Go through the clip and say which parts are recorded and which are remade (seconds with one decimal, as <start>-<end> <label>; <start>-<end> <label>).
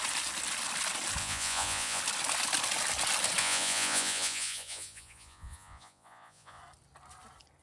0.0-1.2 recorded; 1.2-2.0 remade; 2.0-3.4 recorded; 3.4-6.6 remade; 6.6-7.6 recorded